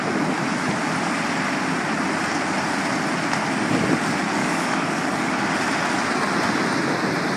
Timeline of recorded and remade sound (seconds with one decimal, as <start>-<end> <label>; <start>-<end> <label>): 0.0-4.4 recorded; 4.4-5.3 remade; 5.3-7.4 recorded